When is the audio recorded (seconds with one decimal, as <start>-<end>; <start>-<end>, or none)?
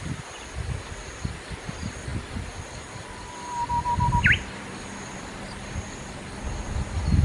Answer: 0.0-7.2